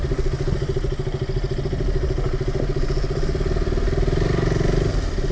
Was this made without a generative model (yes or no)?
yes